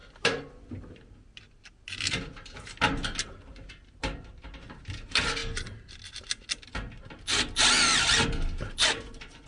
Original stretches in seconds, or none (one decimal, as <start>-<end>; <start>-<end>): 0.0-9.5